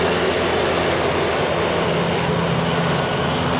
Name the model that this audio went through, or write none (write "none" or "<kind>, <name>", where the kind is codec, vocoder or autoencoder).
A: none